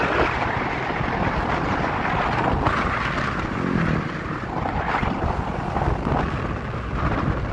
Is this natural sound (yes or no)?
yes